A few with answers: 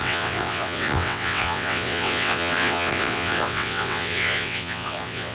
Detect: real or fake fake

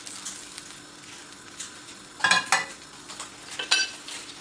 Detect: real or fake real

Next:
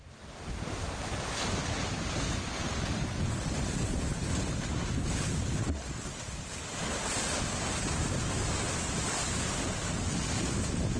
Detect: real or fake real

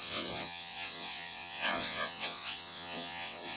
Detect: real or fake fake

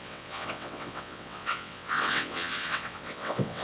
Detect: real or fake fake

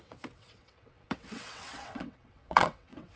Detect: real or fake fake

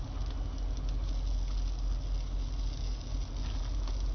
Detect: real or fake real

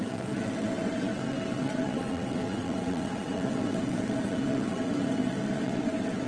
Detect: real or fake fake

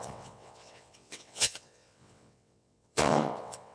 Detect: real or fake fake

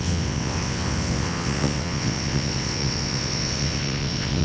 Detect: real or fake fake